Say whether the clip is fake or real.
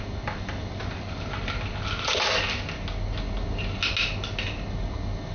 real